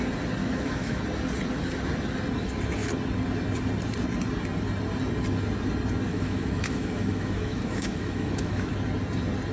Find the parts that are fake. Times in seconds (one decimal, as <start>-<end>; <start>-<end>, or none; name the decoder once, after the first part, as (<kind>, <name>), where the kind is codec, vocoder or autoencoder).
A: 0.4-1.0 (autoencoder, DAC-VAE); 6.1-8.7